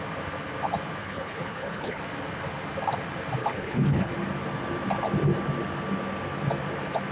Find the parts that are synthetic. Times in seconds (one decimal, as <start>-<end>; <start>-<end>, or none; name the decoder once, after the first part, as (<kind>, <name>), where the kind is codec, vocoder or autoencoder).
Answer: 1.0-2.0 (codec, HILCodec); 3.4-4.1